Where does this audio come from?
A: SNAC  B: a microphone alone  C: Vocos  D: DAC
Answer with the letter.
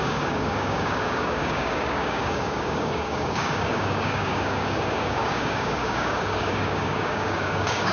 D